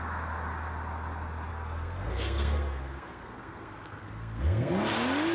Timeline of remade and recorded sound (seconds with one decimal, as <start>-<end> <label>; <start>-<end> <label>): 0.0-1.5 recorded; 1.5-4.7 remade; 4.7-5.3 recorded